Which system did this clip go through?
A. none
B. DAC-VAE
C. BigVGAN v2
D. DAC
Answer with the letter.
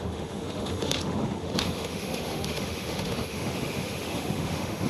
B